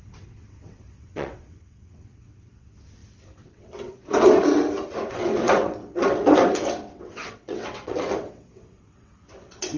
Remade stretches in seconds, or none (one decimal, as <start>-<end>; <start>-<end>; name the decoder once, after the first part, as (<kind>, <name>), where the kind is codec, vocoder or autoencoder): 0.0-4.5 (vocoder, WaveNeXt); 5.1-9.8